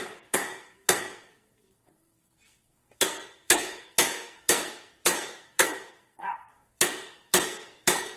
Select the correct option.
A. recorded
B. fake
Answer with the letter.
B